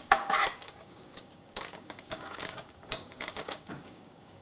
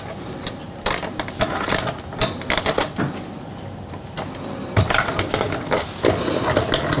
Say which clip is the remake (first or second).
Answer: first